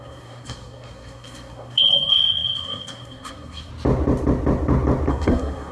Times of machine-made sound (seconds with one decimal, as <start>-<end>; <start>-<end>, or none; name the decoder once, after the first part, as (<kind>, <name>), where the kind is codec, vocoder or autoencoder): 0.0-3.7 (codec, SNAC); 5.1-5.7